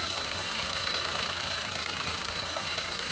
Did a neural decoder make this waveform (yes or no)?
yes